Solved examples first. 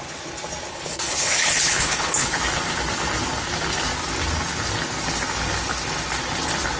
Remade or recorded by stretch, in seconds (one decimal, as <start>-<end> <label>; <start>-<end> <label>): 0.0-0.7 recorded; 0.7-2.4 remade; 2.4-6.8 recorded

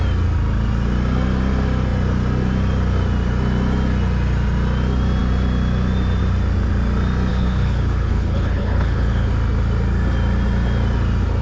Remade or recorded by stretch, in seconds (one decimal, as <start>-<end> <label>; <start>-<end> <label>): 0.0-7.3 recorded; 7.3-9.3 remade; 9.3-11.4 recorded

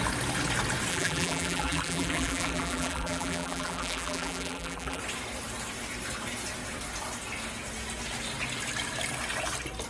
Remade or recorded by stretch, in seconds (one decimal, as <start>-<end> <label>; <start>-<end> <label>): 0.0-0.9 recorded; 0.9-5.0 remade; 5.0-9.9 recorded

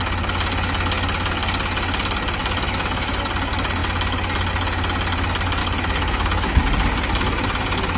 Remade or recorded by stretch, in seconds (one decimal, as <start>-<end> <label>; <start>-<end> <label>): 0.0-2.4 recorded; 2.4-3.3 remade; 3.3-5.6 recorded; 5.6-6.6 remade; 6.6-8.0 recorded

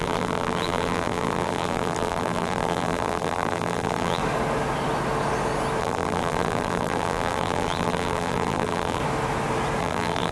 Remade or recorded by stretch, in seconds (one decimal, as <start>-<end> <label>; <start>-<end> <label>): 0.0-4.2 remade; 4.2-5.8 recorded; 5.8-9.0 remade; 9.0-9.8 recorded; 9.8-10.3 remade

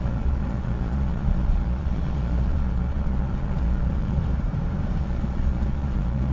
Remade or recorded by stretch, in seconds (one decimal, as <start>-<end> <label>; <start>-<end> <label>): 0.0-4.2 remade; 4.2-5.0 recorded; 5.0-6.3 remade